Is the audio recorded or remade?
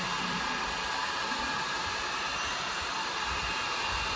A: recorded